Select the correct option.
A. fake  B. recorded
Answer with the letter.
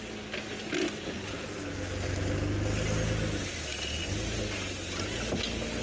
B